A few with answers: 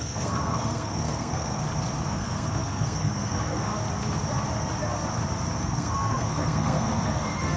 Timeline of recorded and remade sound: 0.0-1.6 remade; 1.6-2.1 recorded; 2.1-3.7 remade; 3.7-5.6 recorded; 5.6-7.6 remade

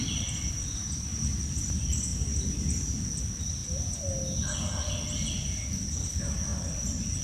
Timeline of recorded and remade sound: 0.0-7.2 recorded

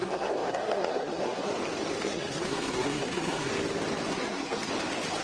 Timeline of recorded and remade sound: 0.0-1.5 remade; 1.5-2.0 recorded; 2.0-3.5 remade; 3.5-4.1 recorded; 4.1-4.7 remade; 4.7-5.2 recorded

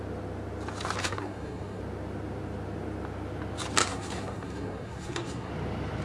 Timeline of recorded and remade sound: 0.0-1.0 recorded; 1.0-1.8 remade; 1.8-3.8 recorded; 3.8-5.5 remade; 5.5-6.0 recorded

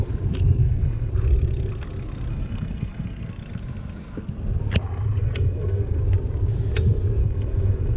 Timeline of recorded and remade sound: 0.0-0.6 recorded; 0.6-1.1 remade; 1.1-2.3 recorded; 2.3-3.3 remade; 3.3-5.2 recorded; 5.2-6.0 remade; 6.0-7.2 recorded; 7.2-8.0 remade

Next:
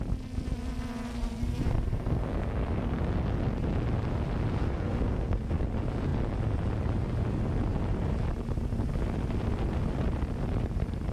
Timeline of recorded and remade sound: 0.0-1.1 recorded; 1.1-3.0 remade; 3.0-4.6 recorded; 4.6-5.6 remade; 5.6-11.1 recorded